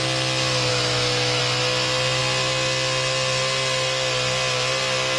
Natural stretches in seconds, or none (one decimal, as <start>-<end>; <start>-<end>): 0.0-0.7; 1.4-5.2